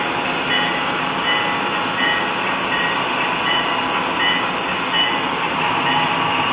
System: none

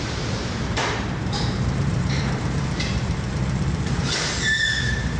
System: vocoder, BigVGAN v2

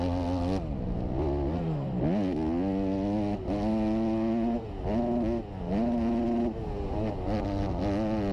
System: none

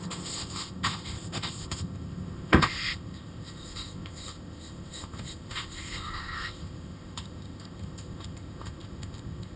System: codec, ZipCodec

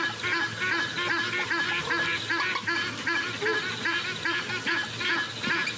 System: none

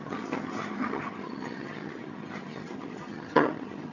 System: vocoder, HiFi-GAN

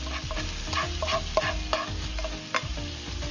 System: none